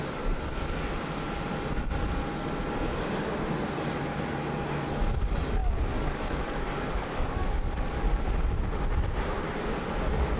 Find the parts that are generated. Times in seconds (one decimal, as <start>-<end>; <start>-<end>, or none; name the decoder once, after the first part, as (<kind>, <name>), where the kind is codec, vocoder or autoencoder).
5.6-8.2 (codec, DAC)